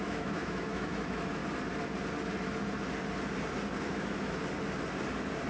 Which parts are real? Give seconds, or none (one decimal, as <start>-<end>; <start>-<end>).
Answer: 1.4-3.8; 4.4-5.5